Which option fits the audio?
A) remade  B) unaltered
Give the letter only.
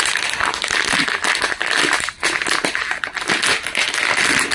B